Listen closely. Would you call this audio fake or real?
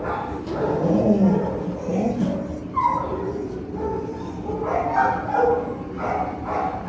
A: real